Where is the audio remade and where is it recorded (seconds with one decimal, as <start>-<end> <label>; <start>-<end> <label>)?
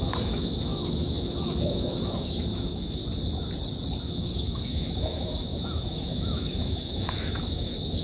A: 0.0-3.0 remade; 3.0-4.0 recorded; 4.0-8.0 remade